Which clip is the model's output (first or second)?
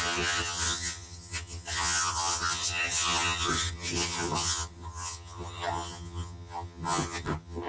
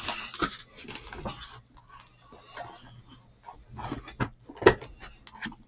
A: first